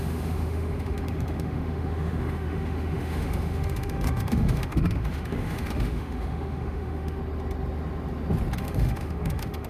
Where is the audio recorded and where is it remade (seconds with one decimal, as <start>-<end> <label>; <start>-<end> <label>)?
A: 0.0-7.2 remade; 7.2-8.6 recorded; 8.6-9.7 remade